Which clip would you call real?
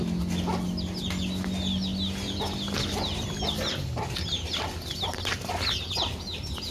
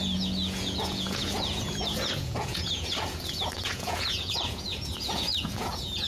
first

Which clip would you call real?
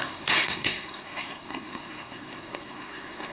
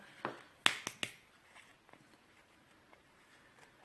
second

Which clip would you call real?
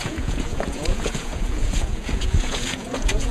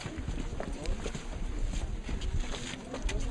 second